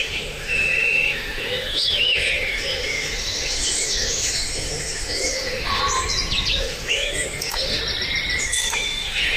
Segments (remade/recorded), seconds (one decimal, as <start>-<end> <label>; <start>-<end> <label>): 0.0-5.8 remade; 5.8-6.6 recorded; 6.6-7.8 remade; 7.8-8.4 recorded; 8.4-9.4 remade